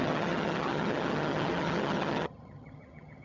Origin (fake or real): fake